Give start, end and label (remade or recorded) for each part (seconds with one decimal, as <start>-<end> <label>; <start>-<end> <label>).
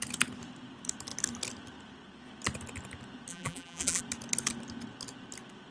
0.0-3.3 recorded; 3.3-4.0 remade; 4.0-5.7 recorded